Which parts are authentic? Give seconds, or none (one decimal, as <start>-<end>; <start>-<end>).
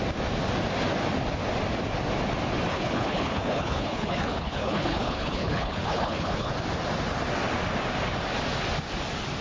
0.0-2.7; 6.5-9.4